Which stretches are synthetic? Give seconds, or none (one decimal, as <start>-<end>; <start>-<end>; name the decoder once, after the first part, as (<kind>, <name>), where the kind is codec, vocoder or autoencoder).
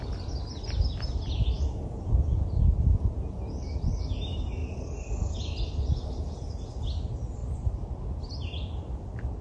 7.4-7.9 (vocoder, BigVGAN v2)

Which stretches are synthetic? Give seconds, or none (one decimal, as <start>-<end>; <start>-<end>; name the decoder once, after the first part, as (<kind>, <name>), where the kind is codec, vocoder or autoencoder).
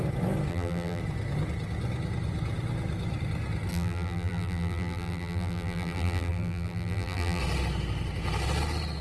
0.5-1.0 (vocoder, BigVGAN v2); 3.7-7.4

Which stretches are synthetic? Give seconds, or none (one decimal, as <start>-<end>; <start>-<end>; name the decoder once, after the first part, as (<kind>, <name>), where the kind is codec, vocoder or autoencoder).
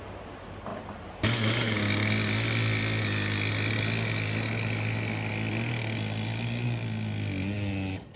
none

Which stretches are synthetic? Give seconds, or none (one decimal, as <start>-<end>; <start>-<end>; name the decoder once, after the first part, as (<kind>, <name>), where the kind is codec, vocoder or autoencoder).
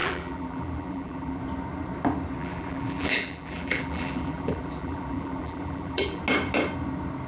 0.0-1.4 (vocoder, BigVGAN v2); 2.4-6.2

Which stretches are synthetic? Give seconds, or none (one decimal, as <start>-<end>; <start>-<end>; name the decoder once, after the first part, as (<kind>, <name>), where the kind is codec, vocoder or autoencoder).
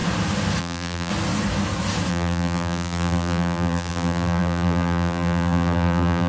0.6-1.1 (vocoder, BigVGAN v2); 2.1-6.3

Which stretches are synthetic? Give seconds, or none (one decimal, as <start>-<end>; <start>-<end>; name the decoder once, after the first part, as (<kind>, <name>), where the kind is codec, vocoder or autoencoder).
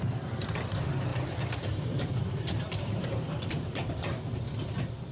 1.1-3.5 (vocoder, BigVGAN v2)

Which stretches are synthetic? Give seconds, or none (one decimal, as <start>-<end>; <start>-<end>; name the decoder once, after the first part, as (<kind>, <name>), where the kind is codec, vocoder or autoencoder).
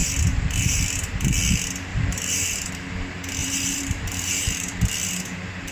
0.0-0.8 (vocoder, BigVGAN v2); 1.9-2.7; 3.4-4.9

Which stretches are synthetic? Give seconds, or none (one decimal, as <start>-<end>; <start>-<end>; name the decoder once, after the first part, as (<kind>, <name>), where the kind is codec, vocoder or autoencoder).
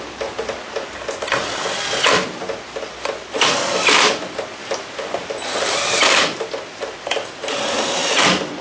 4.6-6.0 (vocoder, BigVGAN v2)